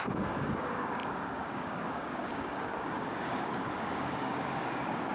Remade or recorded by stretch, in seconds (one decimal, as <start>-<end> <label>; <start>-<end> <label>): 0.0-5.1 remade